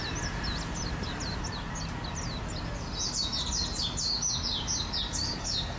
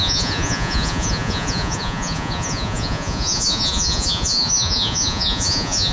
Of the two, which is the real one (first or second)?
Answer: first